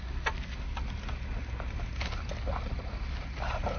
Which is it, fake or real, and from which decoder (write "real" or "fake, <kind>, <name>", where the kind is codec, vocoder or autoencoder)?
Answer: real